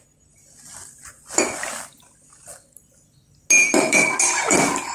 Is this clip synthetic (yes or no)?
no